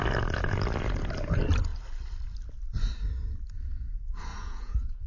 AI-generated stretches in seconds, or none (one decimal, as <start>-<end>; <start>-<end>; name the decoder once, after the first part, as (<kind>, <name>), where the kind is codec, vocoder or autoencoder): 4.3-5.1 (vocoder, Vocos)